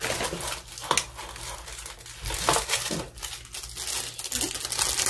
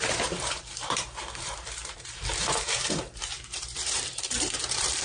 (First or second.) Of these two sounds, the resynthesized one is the second